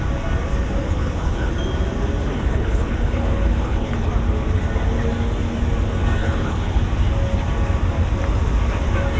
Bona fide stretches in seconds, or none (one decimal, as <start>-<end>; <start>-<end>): 0.0-0.8; 1.5-2.2; 4.1-6.2; 6.8-9.2

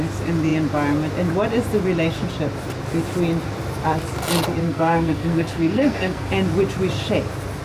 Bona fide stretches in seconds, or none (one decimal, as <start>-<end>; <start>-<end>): 0.0-4.6; 6.3-7.6